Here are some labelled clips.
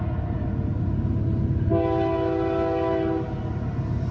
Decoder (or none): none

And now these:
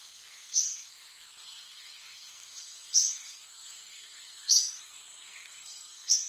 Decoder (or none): codec, SNAC